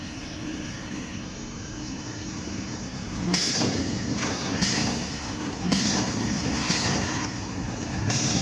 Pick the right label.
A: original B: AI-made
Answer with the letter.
B